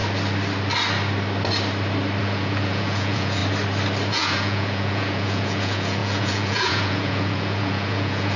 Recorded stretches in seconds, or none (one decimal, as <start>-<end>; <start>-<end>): 0.0-2.2; 3.4-4.1